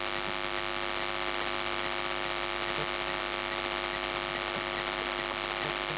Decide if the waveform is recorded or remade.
recorded